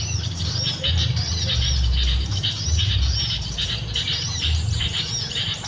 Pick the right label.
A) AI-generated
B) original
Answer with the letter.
A